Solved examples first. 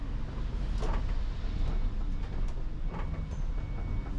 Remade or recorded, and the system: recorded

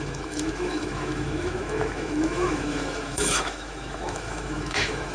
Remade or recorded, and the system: remade, autoencoder, DAC-VAE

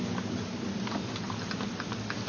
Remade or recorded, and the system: recorded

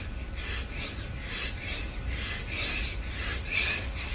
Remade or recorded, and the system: recorded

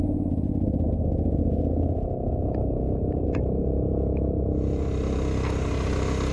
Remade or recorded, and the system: recorded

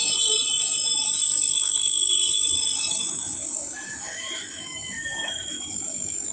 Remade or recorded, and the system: remade, autoencoder, DAC-VAE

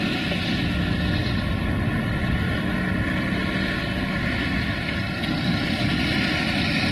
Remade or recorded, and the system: recorded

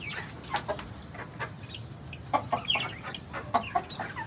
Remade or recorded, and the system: recorded